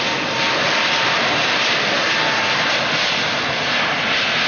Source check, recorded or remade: recorded